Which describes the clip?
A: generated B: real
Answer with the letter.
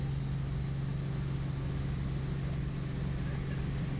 B